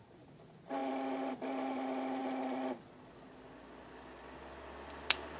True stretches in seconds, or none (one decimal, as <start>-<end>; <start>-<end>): 0.0-5.4

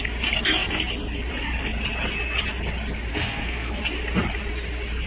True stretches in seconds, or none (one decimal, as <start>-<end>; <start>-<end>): 0.0-3.1; 3.8-5.1

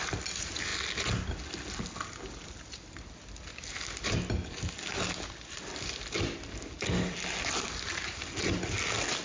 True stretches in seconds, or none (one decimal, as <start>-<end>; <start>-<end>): 0.0-9.2

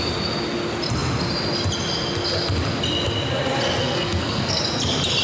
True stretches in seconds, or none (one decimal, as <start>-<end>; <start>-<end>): 0.0-3.8; 4.6-5.2